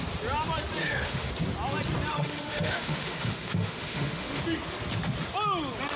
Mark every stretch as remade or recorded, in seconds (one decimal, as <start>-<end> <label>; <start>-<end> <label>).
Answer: 0.0-0.8 recorded; 0.8-1.3 remade; 1.3-2.1 recorded; 2.1-4.4 remade; 4.4-6.0 recorded